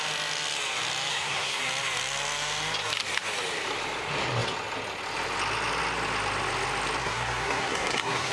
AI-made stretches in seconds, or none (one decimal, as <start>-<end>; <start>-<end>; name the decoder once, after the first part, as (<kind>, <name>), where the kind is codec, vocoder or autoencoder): 1.1-1.6 (codec, SNAC); 7.0-8.3